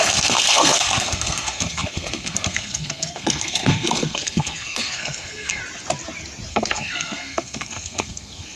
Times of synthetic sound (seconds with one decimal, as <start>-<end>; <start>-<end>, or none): 0.0-5.6; 6.5-8.6